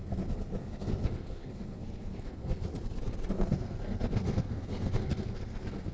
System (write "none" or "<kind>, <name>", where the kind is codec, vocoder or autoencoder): codec, SNAC